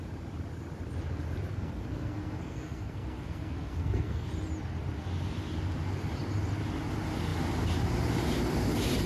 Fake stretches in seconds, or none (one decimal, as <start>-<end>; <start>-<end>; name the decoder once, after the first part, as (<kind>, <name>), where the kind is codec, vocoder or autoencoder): 1.5-4.3 (codec, SNAC)